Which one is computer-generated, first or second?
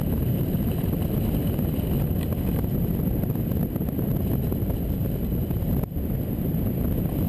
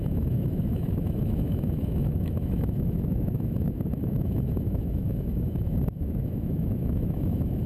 second